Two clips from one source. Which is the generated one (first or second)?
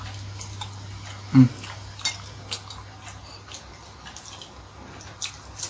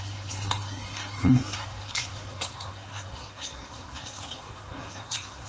second